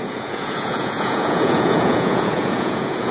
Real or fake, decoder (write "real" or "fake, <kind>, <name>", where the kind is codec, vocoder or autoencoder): fake, vocoder, Vocos